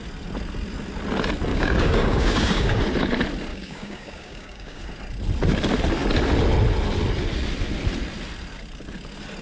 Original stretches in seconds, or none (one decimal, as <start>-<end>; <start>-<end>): 0.0-1.5; 2.8-3.5; 4.8-9.4